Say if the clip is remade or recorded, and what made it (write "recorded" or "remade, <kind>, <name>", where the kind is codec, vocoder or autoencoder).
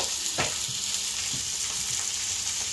recorded